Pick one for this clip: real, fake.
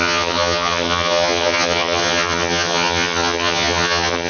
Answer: fake